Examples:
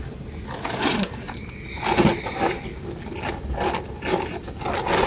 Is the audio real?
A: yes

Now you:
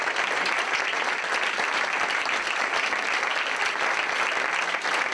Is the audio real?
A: yes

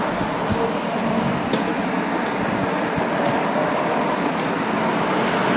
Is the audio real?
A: yes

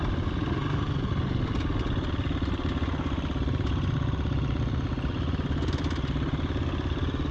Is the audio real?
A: yes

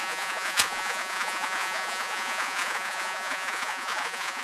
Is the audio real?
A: no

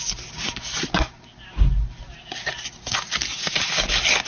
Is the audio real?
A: yes